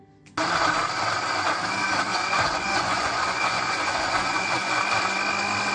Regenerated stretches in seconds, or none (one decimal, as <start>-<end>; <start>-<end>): 2.1-4.8